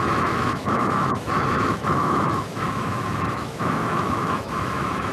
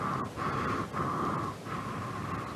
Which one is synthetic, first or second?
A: first